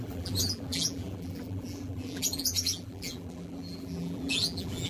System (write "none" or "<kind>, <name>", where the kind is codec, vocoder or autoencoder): vocoder, BigVGAN v2